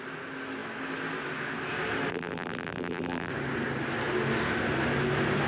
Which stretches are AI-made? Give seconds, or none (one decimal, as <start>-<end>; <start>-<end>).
2.1-3.3

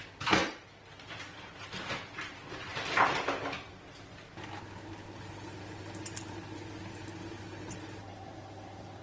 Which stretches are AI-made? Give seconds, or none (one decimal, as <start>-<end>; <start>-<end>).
none

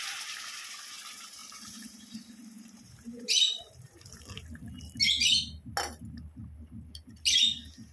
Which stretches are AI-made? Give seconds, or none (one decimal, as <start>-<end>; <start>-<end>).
1.4-4.8

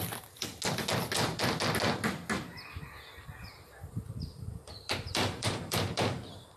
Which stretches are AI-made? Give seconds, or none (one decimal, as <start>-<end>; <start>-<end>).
0.0-0.5; 3.4-6.6

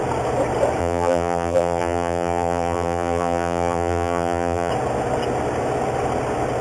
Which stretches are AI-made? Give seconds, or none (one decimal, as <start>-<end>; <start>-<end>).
0.8-4.7

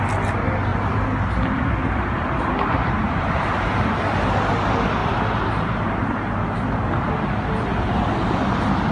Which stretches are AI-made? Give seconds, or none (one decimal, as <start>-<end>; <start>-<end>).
0.7-4.0; 5.0-7.1